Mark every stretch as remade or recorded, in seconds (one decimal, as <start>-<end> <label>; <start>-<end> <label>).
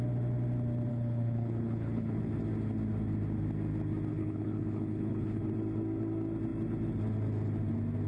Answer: 0.0-0.9 recorded; 0.9-2.2 remade; 2.2-4.1 recorded; 4.1-5.4 remade; 5.4-8.1 recorded